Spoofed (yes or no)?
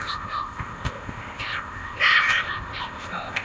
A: yes